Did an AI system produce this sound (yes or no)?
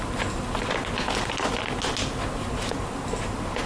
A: no